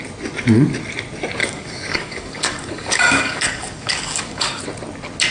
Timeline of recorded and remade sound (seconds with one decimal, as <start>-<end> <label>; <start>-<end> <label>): 0.0-1.4 recorded; 1.4-4.6 remade; 4.6-5.3 recorded